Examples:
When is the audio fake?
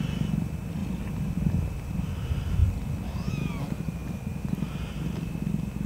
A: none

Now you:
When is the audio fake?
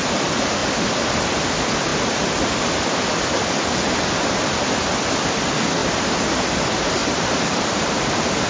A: 5.8-6.4 (vocoder, BigVGAN v2); 7.0-8.1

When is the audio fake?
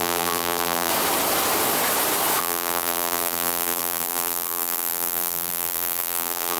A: 0.0-0.9 (vocoder, BigVGAN v2); 2.4-6.6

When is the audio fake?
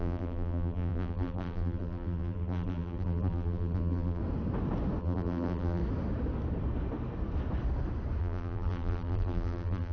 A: 0.0-4.2 (vocoder, BigVGAN v2); 5.0-5.8; 8.2-9.9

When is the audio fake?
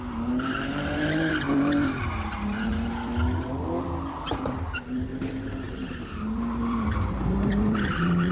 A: 0.0-3.1 (vocoder, BigVGAN v2); 4.4-5.1; 5.7-8.3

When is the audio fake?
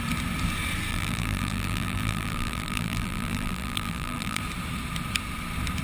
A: 0.9-4.4 (vocoder, BigVGAN v2)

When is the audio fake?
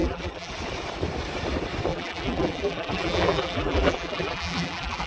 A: 0.0-0.5 (vocoder, BigVGAN v2); 1.9-5.1